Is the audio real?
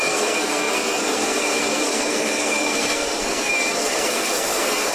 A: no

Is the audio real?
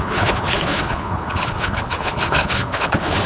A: no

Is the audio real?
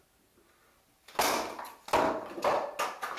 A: yes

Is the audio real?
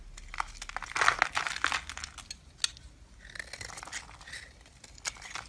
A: yes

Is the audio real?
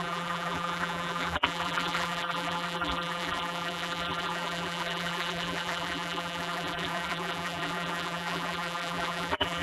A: no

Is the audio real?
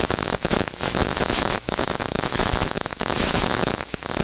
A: no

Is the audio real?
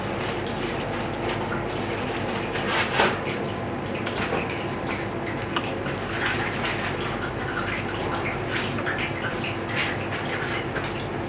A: yes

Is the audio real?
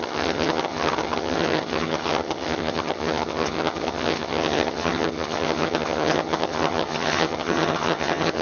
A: no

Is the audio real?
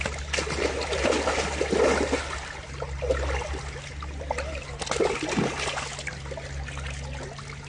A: yes